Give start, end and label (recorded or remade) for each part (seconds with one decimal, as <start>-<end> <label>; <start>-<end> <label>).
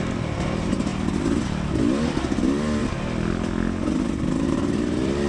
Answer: 0.0-5.3 recorded